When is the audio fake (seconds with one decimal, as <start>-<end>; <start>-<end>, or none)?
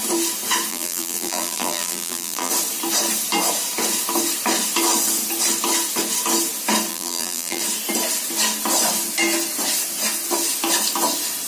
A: 0.7-2.5; 6.9-7.6